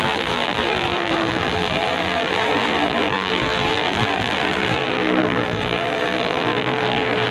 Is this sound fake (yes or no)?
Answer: yes